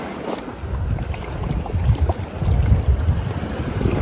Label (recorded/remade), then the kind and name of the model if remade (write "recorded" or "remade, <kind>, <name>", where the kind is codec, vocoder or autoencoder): recorded